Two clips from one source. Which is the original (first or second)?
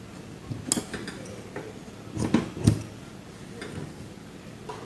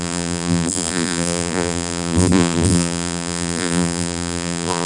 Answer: first